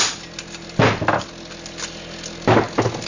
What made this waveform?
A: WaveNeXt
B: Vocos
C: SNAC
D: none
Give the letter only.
D